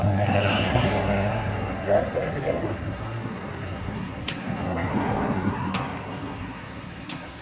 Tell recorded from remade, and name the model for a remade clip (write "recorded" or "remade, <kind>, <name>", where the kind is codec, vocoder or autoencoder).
remade, codec, SNAC